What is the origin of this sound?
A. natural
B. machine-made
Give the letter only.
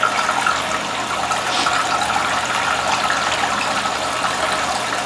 A